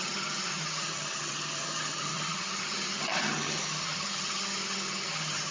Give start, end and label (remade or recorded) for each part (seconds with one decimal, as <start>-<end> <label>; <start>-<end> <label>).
0.0-5.5 remade